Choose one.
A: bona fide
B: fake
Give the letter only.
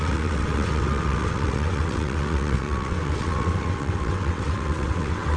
B